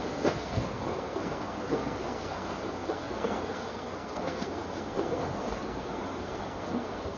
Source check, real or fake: fake